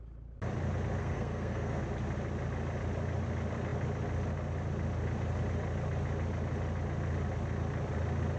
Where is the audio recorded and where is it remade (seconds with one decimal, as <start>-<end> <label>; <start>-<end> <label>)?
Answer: 0.0-1.0 recorded; 1.0-1.8 remade; 1.8-8.4 recorded